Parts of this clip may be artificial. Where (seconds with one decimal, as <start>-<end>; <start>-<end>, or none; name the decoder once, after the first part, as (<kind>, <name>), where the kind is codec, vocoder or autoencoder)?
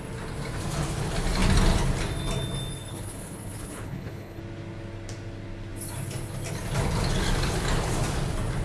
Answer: 2.9-4.4 (codec, HILCodec)